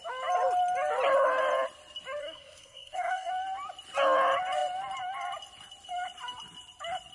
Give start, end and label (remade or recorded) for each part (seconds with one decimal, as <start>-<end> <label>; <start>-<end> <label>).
0.0-2.2 recorded; 2.2-3.3 remade; 3.3-7.1 recorded